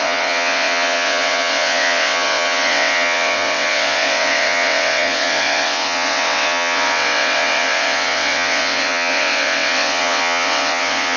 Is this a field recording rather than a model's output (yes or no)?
no